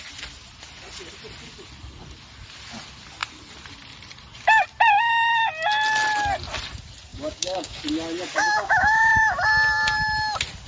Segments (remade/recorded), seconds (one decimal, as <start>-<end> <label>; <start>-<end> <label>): 0.0-7.1 recorded; 7.1-7.8 remade; 7.8-8.3 recorded; 8.3-9.1 remade; 9.1-10.7 recorded